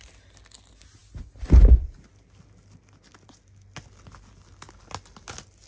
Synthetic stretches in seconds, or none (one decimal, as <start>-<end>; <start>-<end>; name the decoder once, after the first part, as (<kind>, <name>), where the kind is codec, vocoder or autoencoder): none